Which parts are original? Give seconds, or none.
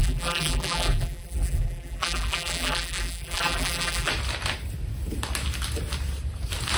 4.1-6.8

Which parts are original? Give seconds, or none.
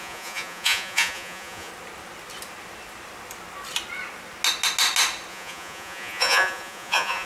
1.7-5.3